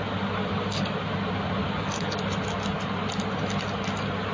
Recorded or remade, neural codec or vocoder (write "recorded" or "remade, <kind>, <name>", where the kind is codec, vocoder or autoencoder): recorded